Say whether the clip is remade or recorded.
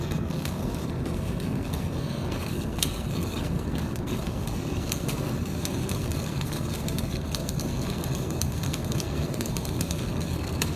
remade